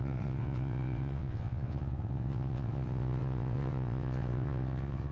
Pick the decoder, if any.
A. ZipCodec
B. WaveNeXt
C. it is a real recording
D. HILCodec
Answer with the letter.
B